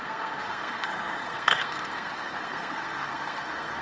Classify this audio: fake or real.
fake